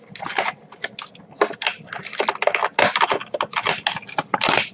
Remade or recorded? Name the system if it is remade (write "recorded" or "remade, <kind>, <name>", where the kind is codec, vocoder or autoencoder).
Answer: recorded